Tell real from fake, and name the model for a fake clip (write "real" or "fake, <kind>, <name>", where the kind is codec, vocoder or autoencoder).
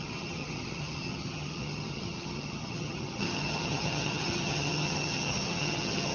fake, vocoder, HiFi-GAN